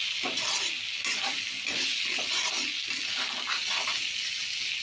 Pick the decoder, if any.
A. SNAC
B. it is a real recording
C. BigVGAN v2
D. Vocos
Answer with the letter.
B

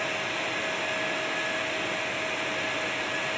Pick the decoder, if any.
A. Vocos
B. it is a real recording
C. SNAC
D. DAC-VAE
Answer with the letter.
B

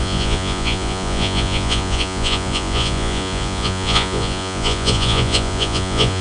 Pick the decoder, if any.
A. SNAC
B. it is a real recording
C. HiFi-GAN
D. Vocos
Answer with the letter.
D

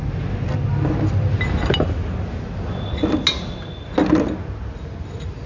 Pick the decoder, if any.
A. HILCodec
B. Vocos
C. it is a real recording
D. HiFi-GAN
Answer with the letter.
C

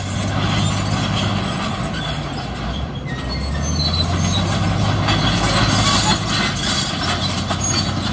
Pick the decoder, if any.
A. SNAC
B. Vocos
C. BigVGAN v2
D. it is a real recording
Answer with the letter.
D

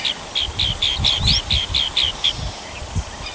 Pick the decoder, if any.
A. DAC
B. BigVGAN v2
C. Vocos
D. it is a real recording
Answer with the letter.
D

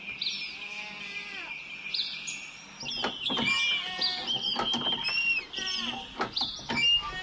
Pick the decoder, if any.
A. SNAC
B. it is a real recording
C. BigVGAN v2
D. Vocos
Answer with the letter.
B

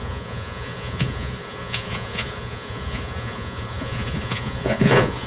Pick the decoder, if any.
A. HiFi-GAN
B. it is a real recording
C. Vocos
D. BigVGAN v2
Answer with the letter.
C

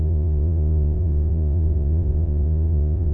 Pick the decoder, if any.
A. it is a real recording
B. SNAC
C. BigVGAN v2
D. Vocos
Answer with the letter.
D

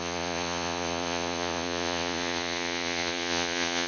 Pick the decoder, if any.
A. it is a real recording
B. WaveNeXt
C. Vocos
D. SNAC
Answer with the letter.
C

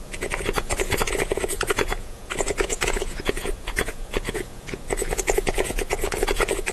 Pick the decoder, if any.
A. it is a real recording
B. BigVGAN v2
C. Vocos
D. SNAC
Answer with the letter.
C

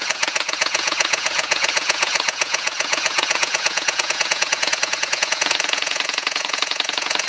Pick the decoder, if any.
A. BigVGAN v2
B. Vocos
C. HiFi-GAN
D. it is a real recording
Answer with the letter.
B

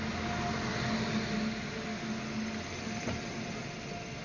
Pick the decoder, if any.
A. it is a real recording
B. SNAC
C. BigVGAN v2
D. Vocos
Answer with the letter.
A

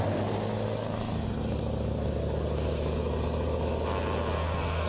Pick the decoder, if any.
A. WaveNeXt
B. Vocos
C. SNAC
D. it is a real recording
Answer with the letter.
D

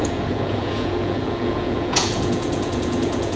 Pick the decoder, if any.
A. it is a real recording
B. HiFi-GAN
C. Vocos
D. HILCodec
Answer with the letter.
C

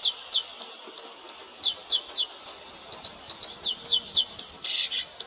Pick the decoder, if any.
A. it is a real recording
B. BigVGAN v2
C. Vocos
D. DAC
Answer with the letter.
A